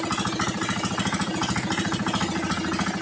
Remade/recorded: recorded